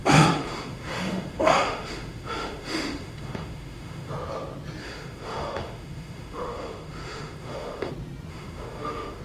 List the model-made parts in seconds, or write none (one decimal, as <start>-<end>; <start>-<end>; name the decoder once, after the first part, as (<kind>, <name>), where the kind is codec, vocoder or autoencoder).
0.0-4.1 (autoencoder, DAC-VAE); 4.8-7.9; 8.3-9.2